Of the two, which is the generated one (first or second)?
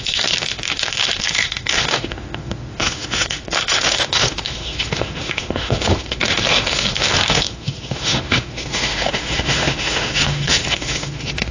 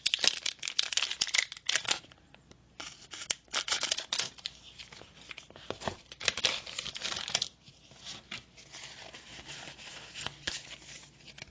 first